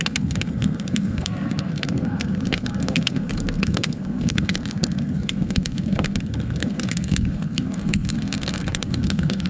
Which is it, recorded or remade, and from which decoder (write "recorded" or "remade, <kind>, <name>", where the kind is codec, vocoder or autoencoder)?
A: remade, codec, SNAC